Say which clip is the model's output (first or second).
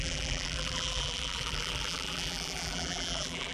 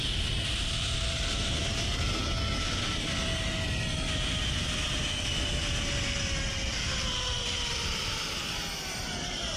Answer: first